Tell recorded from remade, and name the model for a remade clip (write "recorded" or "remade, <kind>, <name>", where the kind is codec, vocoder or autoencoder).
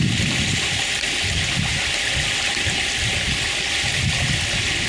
recorded